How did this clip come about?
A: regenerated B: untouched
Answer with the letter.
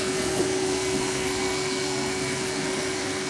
A